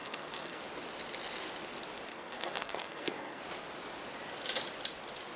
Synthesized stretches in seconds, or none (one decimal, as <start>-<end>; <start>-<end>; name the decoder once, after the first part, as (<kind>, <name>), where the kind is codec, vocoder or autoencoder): 0.0-0.6 (codec, SNAC); 2.1-3.4